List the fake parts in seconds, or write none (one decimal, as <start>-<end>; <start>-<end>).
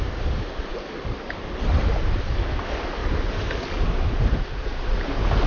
none